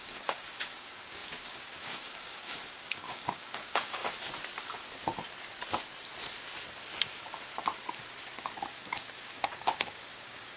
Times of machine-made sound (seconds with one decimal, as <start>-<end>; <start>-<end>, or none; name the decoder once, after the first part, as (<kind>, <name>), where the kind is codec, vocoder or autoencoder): 0.0-4.0 (codec, DAC); 8.7-10.6